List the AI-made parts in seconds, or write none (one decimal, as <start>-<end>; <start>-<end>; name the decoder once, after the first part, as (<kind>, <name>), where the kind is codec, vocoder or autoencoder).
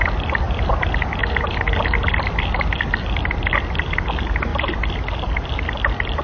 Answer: 1.2-4.1 (vocoder, BigVGAN v2); 4.5-5.6